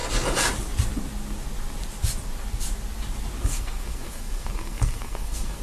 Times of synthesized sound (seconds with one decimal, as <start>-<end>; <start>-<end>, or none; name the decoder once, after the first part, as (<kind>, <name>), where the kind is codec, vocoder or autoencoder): 3.4-5.6 (codec, SNAC)